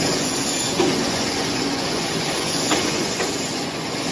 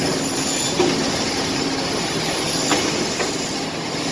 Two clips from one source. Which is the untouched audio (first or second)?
second